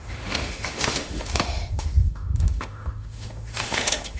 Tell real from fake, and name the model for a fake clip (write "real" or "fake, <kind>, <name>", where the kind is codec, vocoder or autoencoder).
fake, autoencoder, DAC-VAE